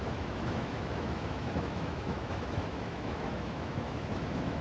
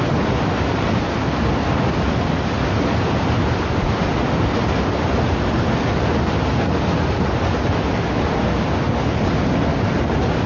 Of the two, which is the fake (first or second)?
first